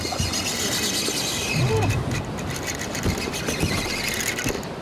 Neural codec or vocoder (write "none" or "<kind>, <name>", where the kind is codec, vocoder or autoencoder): none